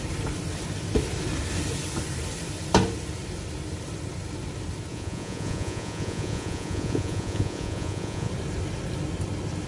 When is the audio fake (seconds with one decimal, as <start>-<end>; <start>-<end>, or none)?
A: 4.9-8.3